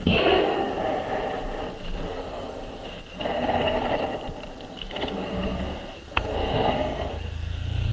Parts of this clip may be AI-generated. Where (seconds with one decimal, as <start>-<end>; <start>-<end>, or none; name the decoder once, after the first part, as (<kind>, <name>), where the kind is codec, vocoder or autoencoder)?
0.0-0.7 (codec, SNAC); 2.1-3.8; 4.7-7.9